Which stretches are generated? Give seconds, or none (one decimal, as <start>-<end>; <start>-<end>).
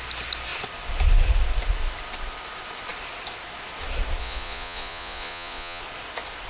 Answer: 4.2-5.8